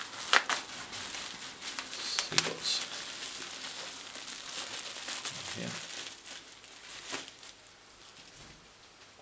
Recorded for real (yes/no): yes